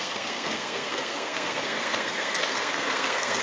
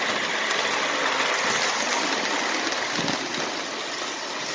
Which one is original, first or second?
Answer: second